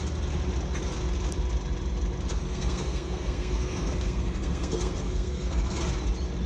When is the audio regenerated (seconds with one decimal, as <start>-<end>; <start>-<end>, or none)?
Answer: 2.3-5.8